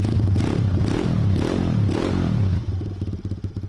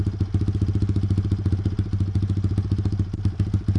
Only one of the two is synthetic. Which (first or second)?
first